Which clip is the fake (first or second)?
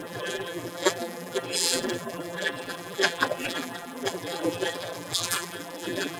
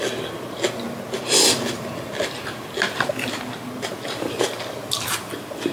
first